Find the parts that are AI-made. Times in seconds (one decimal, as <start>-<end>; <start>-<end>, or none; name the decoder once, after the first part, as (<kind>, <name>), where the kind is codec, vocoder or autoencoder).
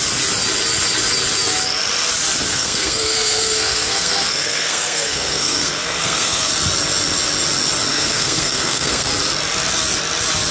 2.5-6.5 (codec, SNAC); 7.9-9.1